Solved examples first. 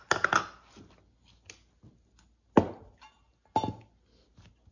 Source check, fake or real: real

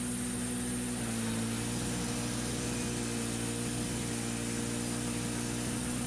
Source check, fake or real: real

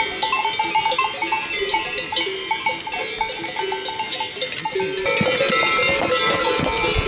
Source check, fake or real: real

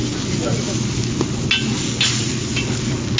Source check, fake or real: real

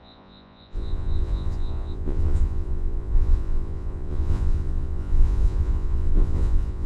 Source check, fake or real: fake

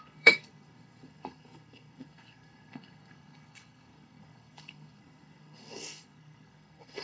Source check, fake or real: fake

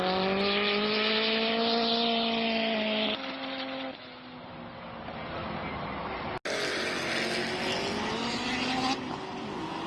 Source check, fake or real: real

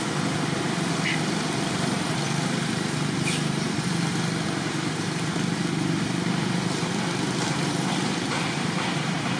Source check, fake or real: fake